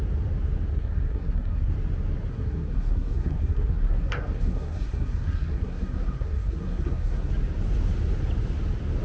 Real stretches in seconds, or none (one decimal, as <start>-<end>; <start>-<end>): 0.0-0.7; 1.7-2.3; 7.3-9.0